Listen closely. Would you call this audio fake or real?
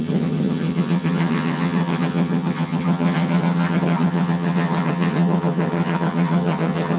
fake